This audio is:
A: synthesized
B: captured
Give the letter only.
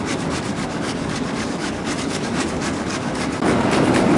A